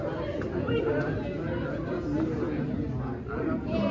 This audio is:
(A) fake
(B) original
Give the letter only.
B